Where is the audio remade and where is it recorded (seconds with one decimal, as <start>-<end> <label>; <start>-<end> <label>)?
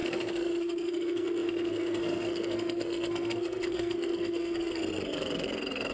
0.0-5.9 remade